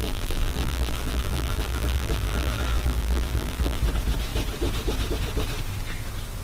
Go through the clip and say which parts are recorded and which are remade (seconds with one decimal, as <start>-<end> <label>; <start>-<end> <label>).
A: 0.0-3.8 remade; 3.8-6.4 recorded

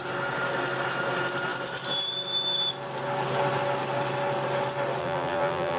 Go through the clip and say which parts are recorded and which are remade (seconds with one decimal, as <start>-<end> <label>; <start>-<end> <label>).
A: 0.0-5.0 recorded; 5.0-5.8 remade

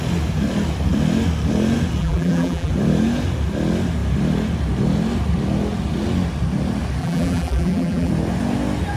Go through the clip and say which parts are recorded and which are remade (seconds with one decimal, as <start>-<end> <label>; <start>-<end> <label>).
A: 0.0-2.0 recorded; 2.0-2.7 remade; 2.7-7.0 recorded; 7.0-8.1 remade; 8.1-9.0 recorded